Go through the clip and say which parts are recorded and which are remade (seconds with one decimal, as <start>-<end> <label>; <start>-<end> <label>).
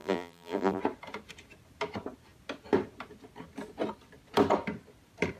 0.0-0.8 remade; 0.8-5.4 recorded